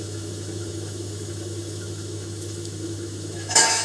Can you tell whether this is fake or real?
fake